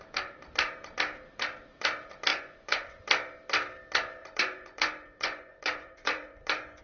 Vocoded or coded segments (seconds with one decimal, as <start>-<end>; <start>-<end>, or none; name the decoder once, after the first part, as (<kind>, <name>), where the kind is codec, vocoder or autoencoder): 2.3-3.0 (vocoder, Vocos); 4.2-6.8